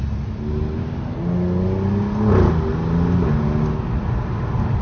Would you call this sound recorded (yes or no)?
yes